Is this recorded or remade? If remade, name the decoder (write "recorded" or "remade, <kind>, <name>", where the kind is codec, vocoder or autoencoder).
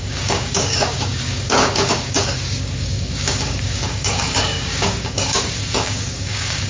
remade, codec, DAC